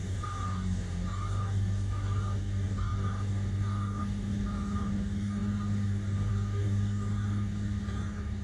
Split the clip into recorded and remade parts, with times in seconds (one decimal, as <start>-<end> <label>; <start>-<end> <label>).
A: 0.0-8.4 remade